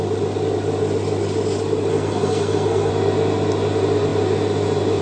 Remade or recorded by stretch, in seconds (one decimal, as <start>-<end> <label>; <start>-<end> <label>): 0.0-1.9 recorded; 1.9-2.9 remade; 2.9-5.0 recorded